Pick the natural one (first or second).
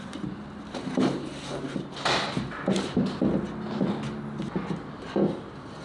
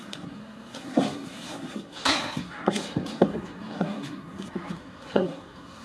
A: first